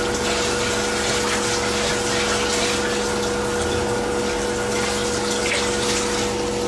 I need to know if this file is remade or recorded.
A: recorded